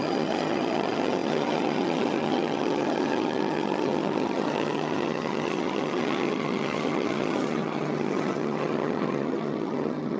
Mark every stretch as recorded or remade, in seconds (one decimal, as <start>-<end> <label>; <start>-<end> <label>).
0.0-10.2 remade